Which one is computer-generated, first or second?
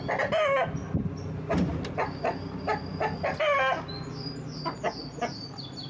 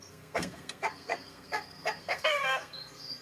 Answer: second